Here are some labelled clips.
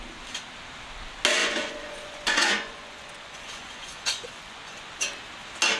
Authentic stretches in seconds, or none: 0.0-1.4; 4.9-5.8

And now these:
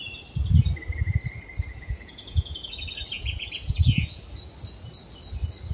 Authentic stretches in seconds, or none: 0.0-1.7; 2.7-3.1; 4.2-5.7

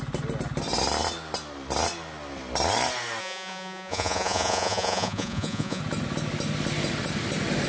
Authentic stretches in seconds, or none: 0.0-3.2; 5.8-7.7